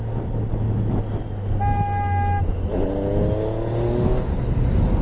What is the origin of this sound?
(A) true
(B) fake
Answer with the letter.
A